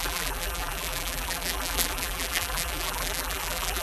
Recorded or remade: remade